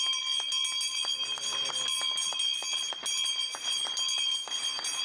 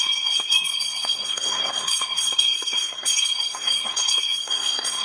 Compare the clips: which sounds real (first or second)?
first